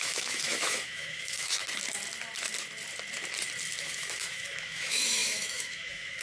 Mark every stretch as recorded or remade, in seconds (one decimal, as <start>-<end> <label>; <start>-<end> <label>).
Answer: 0.0-1.6 remade; 1.6-3.8 recorded; 3.8-6.2 remade